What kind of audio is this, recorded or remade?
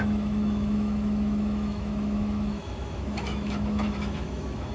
remade